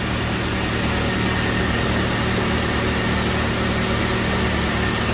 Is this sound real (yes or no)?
yes